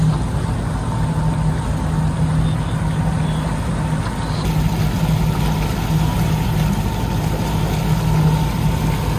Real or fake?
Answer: real